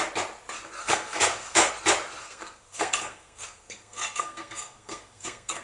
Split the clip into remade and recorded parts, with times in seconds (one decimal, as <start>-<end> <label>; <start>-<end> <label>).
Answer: 0.0-0.8 recorded; 0.8-1.7 remade; 1.7-2.2 recorded; 2.2-5.6 remade